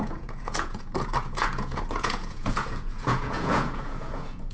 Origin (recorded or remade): remade